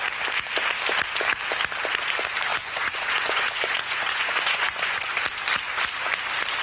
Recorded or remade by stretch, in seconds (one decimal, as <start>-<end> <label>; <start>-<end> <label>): 0.0-2.5 recorded; 2.5-5.2 remade; 5.2-6.6 recorded

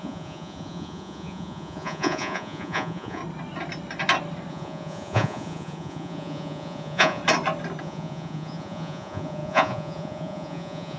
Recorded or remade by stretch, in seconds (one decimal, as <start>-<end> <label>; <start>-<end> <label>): 0.0-3.2 remade; 3.2-4.5 recorded; 4.5-7.2 remade; 7.2-7.8 recorded; 7.8-11.0 remade

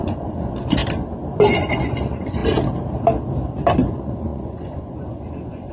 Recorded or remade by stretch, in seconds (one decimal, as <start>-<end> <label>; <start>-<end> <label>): 0.0-0.8 remade; 0.8-1.6 recorded; 1.6-2.4 remade; 2.4-3.8 recorded; 3.8-5.7 remade

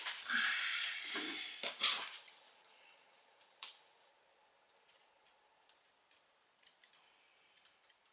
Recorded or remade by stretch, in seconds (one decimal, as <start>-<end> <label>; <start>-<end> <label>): 0.0-0.7 recorded; 0.7-1.4 remade; 1.4-1.8 recorded; 1.8-4.1 remade; 4.1-8.1 recorded